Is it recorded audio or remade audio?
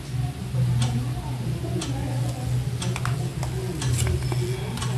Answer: recorded